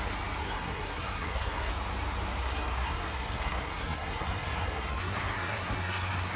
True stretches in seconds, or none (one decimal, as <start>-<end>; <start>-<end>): 0.0-0.4; 1.7-2.4